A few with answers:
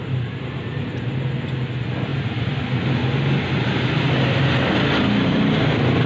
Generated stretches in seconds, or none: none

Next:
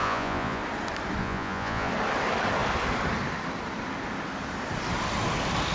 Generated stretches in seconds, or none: 0.0-0.6 (vocoder, Vocos); 1.2-1.9

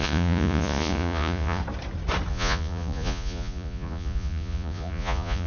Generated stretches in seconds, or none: 0.0-1.6 (vocoder, Vocos); 2.3-5.5

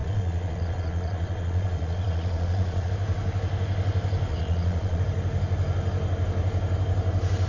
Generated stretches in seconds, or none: 0.0-2.9 (vocoder, Vocos); 4.3-5.0

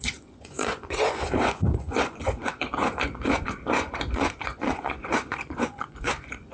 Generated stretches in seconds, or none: 0.0-6.5 (vocoder, Vocos)

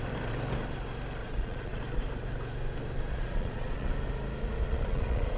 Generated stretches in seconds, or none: 1.2-1.8 (vocoder, Vocos); 3.1-3.9; 4.7-5.4

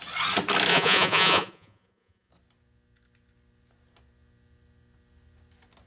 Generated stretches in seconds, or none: 0.7-2.3 (vocoder, Vocos)